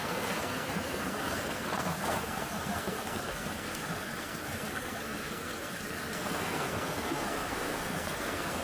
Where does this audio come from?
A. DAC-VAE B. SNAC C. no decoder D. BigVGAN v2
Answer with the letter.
B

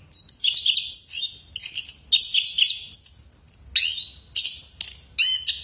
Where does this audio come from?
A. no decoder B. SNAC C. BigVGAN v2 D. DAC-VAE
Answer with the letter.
A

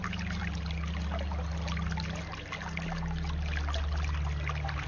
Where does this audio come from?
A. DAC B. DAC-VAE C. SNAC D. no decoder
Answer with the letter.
D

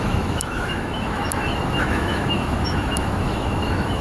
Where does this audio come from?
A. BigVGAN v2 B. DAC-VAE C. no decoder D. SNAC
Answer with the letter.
B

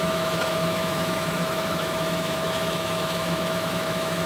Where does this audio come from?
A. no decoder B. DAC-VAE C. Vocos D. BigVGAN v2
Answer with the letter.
B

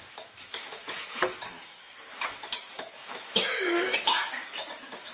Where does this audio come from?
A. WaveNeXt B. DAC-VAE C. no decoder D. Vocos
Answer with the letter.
B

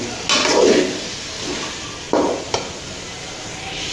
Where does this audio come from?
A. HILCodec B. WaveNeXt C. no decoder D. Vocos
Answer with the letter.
C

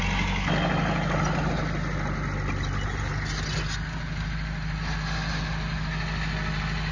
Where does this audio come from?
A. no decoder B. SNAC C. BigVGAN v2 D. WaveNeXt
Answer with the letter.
A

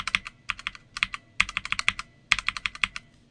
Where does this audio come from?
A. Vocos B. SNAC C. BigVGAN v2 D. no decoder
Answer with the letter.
D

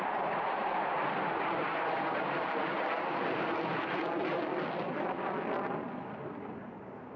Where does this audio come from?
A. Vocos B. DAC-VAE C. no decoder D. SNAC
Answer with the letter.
C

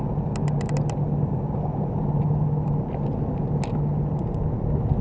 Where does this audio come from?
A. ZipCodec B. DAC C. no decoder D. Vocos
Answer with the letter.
C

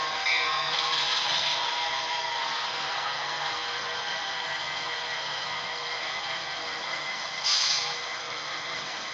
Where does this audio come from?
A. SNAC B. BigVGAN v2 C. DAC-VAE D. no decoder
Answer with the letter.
A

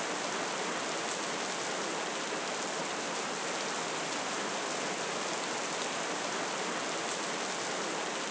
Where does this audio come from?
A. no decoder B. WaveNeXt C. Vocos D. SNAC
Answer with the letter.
A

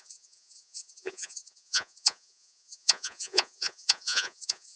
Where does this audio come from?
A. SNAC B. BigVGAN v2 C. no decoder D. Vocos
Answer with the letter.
D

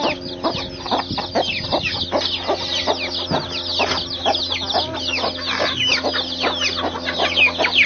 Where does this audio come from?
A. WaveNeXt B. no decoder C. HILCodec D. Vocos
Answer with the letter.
B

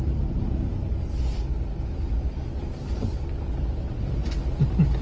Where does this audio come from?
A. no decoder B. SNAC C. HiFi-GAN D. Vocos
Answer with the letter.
A